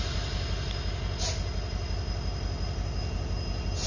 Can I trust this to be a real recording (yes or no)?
yes